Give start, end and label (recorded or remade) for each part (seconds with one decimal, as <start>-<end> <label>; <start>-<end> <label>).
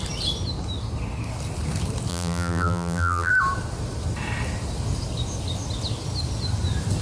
0.0-2.1 recorded; 2.1-3.3 remade; 3.3-7.0 recorded